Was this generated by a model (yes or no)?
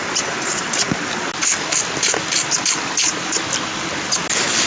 no